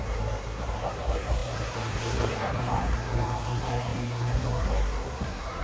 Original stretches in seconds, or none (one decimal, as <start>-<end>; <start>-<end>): none